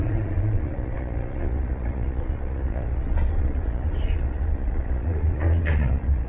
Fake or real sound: fake